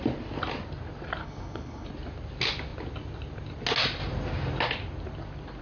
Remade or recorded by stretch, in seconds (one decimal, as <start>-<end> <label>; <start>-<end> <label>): 0.0-1.2 recorded; 1.2-1.9 remade; 1.9-5.6 recorded